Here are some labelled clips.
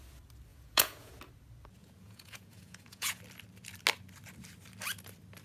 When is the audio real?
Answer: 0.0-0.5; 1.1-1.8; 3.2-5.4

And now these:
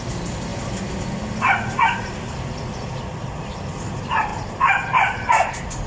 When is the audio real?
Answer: 0.0-5.9

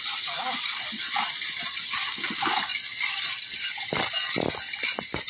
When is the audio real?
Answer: 0.0-5.3

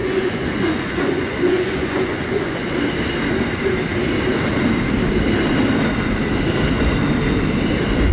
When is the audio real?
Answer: 2.8-8.1

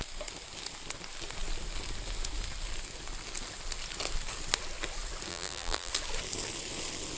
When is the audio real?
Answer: 0.0-5.3; 5.9-7.2

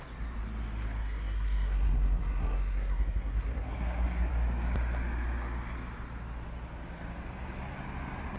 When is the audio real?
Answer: 0.0-1.0; 4.3-8.4